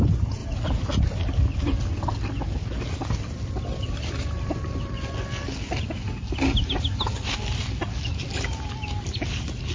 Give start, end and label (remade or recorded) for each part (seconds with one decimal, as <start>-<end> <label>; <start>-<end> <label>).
0.0-9.7 recorded